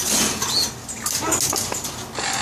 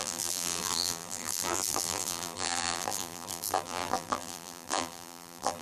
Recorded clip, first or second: first